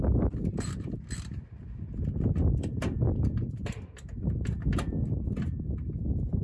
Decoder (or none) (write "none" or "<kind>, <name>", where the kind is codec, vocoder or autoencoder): none